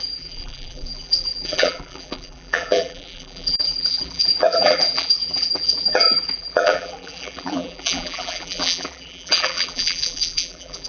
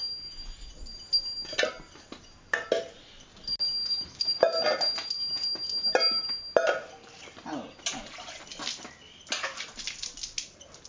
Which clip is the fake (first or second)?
first